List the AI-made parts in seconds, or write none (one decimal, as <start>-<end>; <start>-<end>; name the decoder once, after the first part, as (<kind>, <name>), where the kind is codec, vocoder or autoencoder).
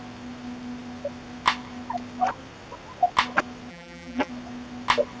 3.7-4.3 (vocoder, BigVGAN v2)